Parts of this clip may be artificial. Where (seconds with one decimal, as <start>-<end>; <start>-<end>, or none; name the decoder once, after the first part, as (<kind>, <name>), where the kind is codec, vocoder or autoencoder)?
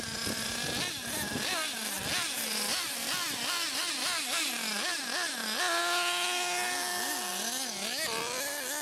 none